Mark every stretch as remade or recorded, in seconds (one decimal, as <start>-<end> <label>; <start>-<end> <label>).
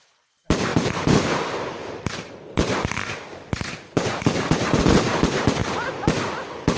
0.0-0.7 recorded; 0.7-4.8 remade; 4.8-5.6 recorded; 5.6-6.2 remade; 6.2-6.8 recorded